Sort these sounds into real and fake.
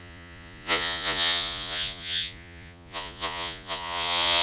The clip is fake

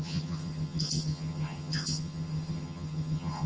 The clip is fake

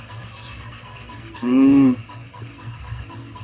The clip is fake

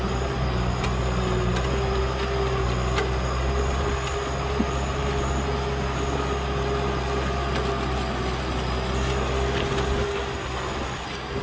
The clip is real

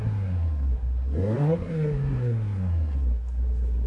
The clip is fake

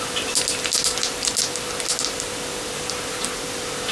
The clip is real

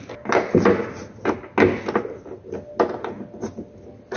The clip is real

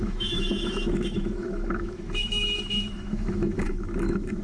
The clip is fake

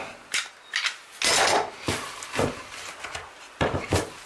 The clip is real